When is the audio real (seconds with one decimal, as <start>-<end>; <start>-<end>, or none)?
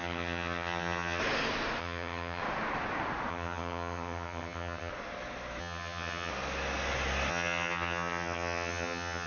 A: 1.2-1.8; 2.4-3.3; 4.9-5.6; 6.3-7.3